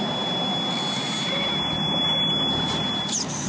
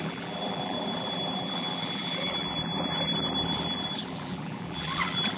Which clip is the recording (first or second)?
first